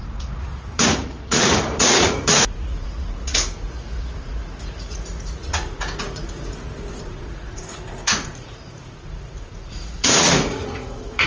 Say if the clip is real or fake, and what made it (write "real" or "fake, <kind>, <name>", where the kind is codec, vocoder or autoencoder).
fake, vocoder, Vocos